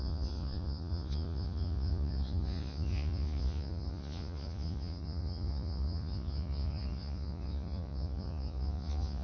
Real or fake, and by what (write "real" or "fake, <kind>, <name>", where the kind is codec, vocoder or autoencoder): fake, vocoder, Vocos